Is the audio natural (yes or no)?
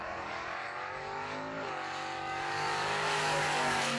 no